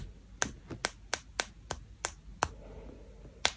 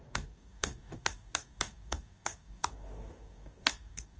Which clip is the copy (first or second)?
second